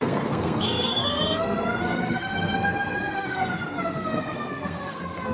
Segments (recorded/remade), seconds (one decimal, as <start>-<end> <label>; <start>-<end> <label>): 0.0-5.3 remade